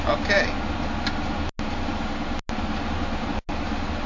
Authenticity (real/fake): real